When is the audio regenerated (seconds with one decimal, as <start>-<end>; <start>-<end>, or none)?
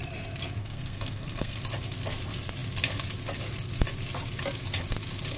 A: 0.6-1.6